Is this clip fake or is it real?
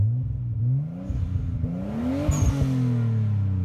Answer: real